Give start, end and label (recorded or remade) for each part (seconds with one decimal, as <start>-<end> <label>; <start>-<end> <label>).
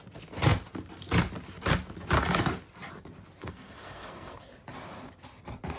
0.0-3.4 recorded; 3.4-4.5 remade; 4.5-5.8 recorded